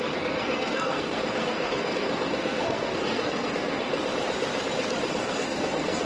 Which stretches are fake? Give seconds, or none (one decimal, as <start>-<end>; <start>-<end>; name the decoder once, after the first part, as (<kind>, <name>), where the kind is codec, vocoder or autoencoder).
0.0-3.9 (codec, SNAC); 5.1-6.1